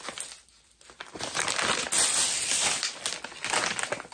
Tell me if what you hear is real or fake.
real